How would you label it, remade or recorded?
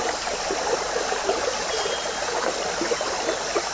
recorded